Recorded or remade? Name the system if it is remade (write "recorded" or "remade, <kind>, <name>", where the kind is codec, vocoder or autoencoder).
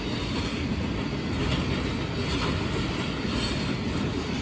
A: recorded